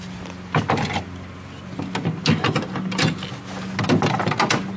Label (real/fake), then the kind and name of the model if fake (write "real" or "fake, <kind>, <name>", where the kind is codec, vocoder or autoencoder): real